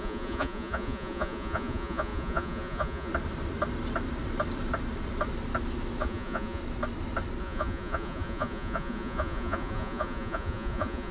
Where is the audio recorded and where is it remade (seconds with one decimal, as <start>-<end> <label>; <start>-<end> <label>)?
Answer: 0.0-3.1 remade; 3.1-6.0 recorded; 6.0-6.6 remade; 6.6-7.4 recorded; 7.4-11.1 remade